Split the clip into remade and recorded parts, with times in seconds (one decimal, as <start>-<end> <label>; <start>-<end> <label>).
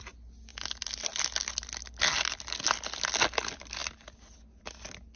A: 0.0-5.2 recorded